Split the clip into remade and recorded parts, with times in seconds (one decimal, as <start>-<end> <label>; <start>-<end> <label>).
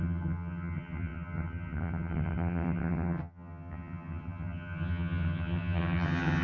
0.0-6.4 remade